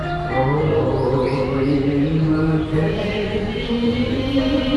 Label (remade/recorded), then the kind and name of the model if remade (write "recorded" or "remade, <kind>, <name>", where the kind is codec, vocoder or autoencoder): remade, vocoder, BigVGAN v2